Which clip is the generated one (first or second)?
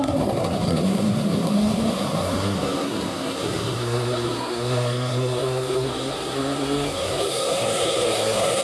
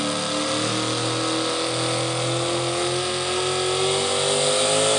first